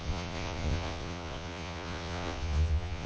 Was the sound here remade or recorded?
remade